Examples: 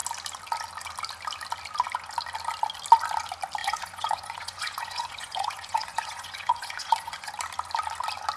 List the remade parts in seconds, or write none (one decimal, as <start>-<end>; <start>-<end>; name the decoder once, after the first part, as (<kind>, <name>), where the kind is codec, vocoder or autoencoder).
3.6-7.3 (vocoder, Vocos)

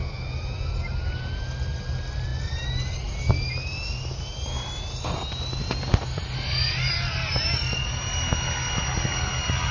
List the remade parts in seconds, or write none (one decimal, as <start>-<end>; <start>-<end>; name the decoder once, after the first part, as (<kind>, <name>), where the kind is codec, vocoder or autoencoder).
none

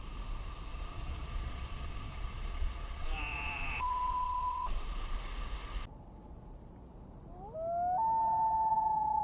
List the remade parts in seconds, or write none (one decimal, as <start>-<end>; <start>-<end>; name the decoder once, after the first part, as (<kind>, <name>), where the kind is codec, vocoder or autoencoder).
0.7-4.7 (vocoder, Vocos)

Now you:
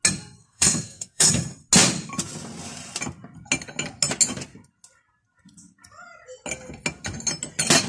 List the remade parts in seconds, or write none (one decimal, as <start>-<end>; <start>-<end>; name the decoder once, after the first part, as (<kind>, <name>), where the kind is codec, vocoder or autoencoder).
0.4-1.3 (codec, SNAC)

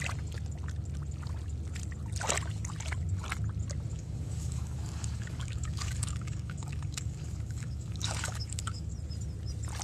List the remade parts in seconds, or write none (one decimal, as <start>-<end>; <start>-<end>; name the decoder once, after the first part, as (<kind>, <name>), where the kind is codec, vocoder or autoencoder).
3.9-8.9 (codec, DAC)

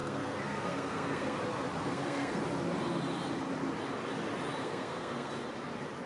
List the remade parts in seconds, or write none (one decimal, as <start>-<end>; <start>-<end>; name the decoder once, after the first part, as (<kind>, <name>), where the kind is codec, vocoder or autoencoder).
0.0-1.4 (codec, SNAC); 1.8-2.4; 4.6-5.3

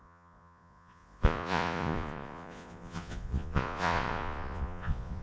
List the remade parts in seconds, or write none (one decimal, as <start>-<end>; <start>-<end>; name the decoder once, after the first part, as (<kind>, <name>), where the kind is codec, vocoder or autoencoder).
0.0-5.2 (vocoder, Vocos)